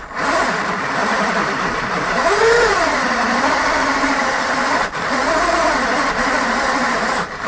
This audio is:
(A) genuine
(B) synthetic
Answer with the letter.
B